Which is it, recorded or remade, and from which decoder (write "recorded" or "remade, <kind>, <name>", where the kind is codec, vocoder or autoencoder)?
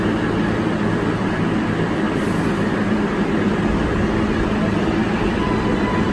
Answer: recorded